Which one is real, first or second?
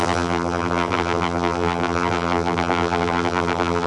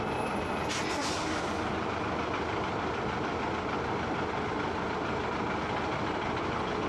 second